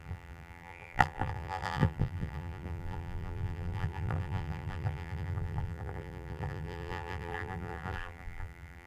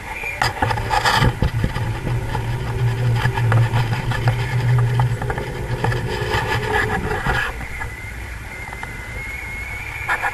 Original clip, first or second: second